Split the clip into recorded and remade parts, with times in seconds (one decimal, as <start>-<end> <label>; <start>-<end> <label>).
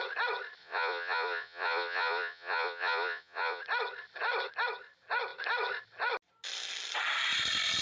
0.0-0.6 recorded; 0.6-3.6 remade; 3.6-7.8 recorded